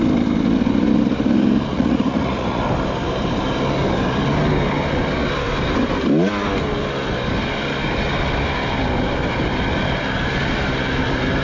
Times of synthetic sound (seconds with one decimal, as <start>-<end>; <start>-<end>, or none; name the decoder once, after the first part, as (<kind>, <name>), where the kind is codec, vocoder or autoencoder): 1.7-2.6 (vocoder, Vocos)